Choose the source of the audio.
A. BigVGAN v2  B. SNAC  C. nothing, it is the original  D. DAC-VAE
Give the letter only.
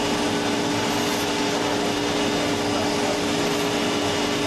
C